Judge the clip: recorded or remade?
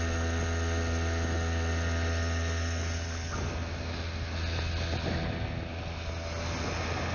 recorded